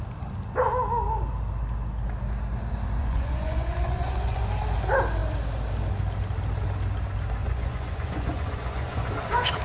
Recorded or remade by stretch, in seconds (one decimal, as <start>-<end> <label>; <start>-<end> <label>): 0.0-3.0 recorded; 3.0-4.4 remade; 4.4-7.4 recorded; 7.4-9.1 remade; 9.1-9.6 recorded